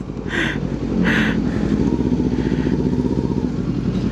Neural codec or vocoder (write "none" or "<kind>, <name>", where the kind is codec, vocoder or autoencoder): none